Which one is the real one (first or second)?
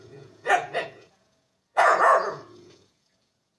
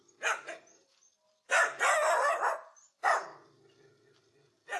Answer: second